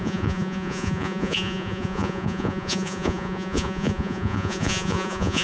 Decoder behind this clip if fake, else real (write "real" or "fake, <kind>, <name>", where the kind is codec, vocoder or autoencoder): fake, vocoder, Vocos